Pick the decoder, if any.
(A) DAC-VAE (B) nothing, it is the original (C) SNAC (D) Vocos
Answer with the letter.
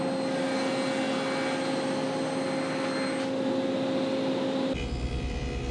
B